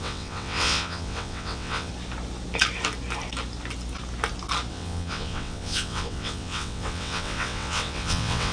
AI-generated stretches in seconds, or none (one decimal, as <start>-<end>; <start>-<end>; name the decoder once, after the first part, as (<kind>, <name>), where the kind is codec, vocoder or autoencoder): 0.0-1.9 (vocoder, WaveNeXt); 4.7-8.5

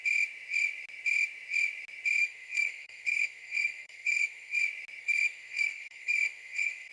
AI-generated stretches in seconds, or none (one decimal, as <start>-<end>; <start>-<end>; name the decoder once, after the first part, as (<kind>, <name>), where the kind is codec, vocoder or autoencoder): 2.2-4.6 (codec, SNAC); 5.0-6.9

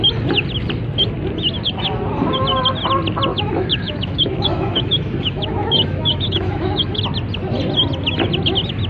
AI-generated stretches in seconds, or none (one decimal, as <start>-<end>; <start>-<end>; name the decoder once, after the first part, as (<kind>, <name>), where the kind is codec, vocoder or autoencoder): 3.3-7.0 (autoencoder, DAC-VAE)

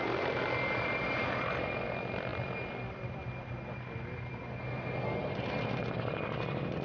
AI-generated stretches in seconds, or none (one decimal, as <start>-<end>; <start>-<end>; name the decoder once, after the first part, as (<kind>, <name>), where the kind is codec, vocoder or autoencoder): none